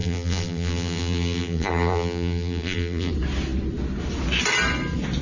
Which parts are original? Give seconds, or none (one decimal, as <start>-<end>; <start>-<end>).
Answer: 3.1-5.2